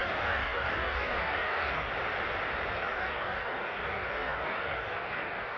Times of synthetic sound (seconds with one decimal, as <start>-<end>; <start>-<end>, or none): 0.0-1.9; 2.7-5.6

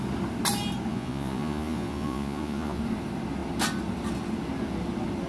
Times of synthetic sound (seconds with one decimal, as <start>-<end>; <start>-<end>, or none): 0.9-2.8